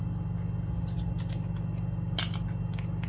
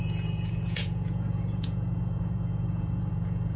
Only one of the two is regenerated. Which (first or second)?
second